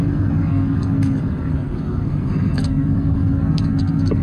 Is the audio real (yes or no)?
no